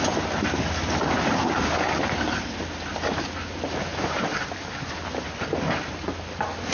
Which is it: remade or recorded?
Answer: recorded